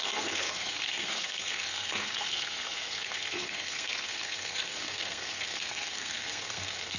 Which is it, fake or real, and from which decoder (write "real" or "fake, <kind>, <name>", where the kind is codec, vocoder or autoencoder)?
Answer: fake, codec, SNAC